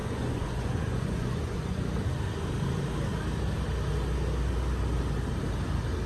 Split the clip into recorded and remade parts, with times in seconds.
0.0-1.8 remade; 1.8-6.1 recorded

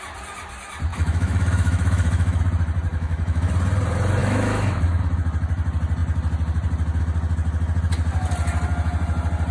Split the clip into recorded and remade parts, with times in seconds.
0.0-0.9 recorded; 0.9-2.4 remade; 2.4-2.9 recorded; 2.9-3.5 remade; 3.5-4.2 recorded; 4.2-5.0 remade; 5.0-9.5 recorded